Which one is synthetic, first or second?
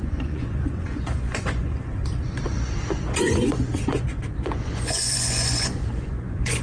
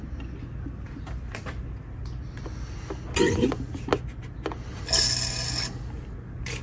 first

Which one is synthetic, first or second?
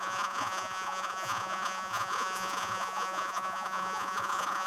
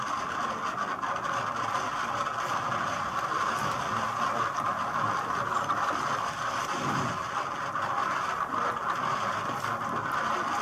first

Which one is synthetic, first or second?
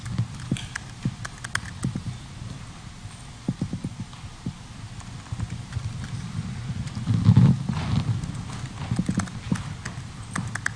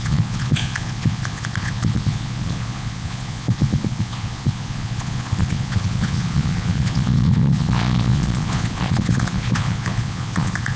second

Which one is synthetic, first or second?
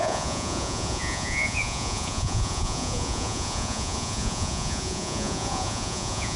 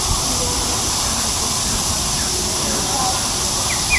first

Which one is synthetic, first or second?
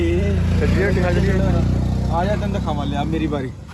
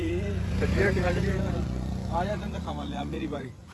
second